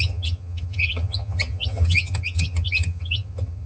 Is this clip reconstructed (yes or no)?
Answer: yes